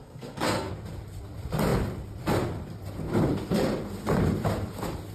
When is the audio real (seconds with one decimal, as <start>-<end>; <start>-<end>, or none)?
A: 0.7-5.1